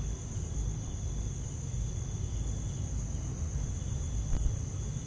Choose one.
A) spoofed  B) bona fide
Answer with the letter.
B